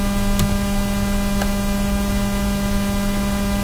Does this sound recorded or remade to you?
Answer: recorded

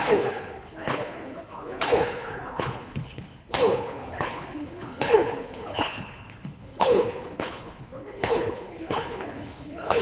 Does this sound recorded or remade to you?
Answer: remade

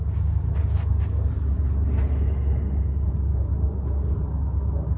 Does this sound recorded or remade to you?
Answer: recorded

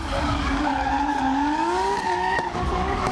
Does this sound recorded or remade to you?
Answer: remade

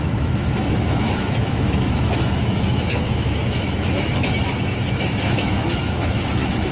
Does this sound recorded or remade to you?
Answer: remade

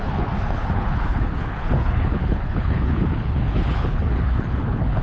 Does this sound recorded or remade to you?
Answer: remade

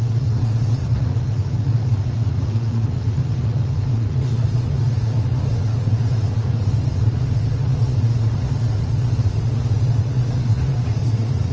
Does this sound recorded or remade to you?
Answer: remade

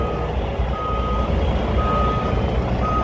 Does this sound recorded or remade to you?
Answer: recorded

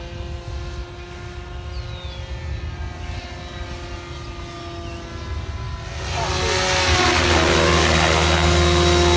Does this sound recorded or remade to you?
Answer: recorded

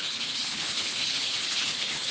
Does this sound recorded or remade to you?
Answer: remade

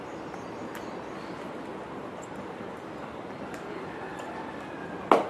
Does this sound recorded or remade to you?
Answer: recorded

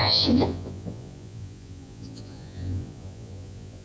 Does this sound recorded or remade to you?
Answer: remade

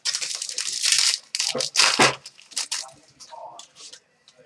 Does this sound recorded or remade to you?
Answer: recorded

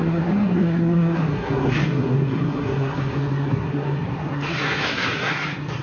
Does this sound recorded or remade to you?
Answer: remade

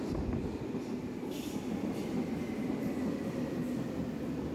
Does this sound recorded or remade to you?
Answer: recorded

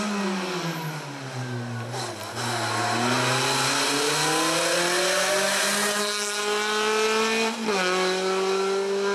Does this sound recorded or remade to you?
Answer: recorded